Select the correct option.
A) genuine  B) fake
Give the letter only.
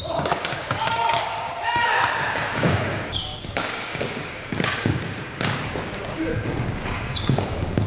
B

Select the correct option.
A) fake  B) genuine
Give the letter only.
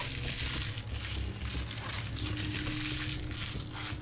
B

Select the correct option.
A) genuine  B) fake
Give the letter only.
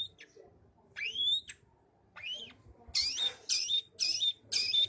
A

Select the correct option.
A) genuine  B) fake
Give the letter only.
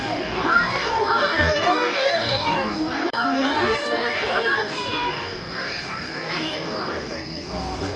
B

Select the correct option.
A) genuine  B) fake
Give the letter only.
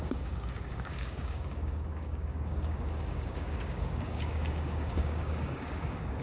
B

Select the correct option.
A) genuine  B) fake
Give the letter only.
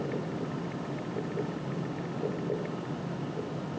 A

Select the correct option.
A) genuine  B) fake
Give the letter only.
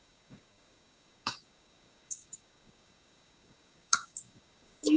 B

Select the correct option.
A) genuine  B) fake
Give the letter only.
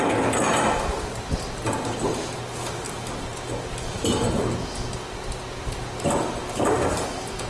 A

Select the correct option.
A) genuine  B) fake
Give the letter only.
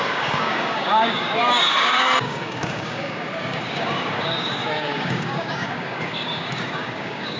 B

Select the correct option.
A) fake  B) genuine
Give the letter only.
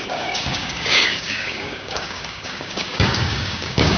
A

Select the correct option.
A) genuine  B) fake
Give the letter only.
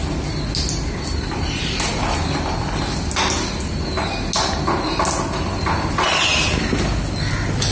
A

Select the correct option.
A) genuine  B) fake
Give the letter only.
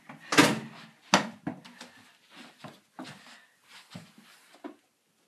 A